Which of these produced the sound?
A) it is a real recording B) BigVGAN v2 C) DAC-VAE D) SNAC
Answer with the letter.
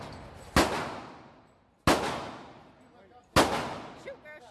A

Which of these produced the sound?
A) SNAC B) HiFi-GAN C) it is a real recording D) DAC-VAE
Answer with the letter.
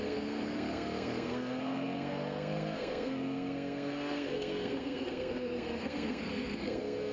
A